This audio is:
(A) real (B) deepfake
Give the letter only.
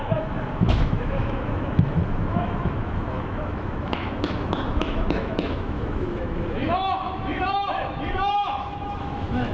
B